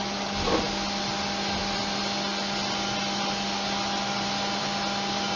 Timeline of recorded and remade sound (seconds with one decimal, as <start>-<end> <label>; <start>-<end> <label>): 0.0-5.4 recorded